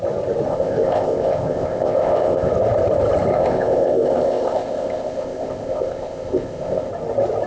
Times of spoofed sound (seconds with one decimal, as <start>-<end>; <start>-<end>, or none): 0.5-2.5; 3.3-6.9